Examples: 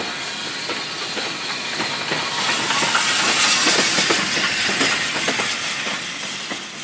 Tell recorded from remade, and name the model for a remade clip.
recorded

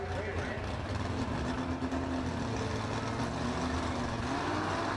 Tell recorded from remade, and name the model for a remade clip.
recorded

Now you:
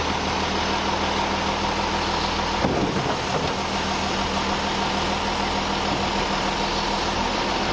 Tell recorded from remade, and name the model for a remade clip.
recorded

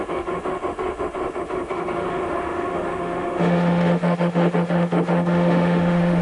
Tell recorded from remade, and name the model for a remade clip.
remade, autoencoder, DAC-VAE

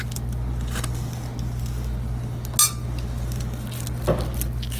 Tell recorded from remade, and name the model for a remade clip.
recorded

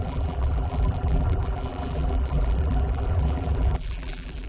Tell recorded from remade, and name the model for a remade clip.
remade, vocoder, BigVGAN v2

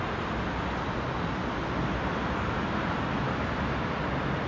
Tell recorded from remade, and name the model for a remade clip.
recorded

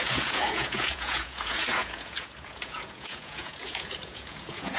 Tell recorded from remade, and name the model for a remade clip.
remade, vocoder, Vocos